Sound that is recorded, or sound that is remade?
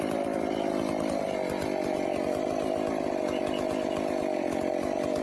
recorded